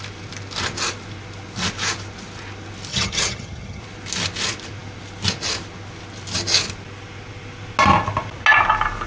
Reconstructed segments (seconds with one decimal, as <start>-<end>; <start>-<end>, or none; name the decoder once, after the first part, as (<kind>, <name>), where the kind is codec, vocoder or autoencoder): 2.9-3.8 (vocoder, HiFi-GAN)